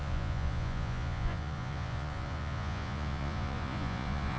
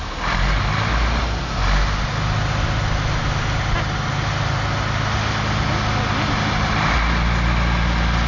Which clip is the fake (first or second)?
first